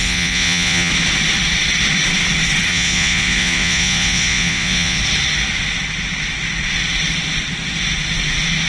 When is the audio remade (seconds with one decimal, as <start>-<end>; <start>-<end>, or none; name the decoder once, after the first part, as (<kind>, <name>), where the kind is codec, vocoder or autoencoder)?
0.0-0.9 (vocoder, Vocos); 2.7-5.0